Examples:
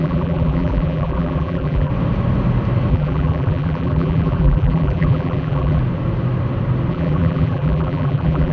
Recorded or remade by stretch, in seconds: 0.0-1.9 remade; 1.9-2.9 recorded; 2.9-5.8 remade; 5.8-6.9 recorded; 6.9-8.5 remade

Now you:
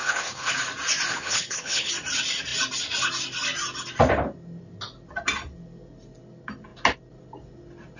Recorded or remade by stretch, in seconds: 0.0-0.5 remade; 0.5-1.1 recorded; 1.1-1.9 remade; 1.9-8.0 recorded

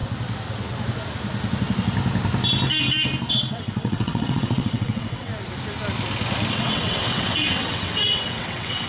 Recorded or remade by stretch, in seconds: 0.0-3.3 recorded; 3.3-5.3 remade; 5.3-6.5 recorded; 6.5-8.9 remade